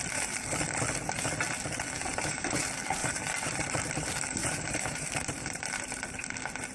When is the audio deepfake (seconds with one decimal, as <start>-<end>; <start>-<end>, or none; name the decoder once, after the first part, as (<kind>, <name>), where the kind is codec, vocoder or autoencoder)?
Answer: 2.1-2.6 (vocoder, BigVGAN v2); 3.0-6.0